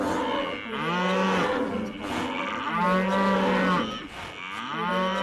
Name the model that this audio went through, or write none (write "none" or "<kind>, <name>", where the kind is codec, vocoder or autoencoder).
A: none